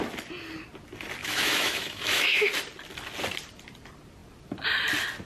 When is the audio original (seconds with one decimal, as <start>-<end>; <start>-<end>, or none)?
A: 0.0-1.2; 2.5-5.3